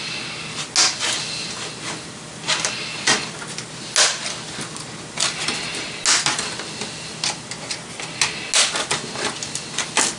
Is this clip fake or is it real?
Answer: real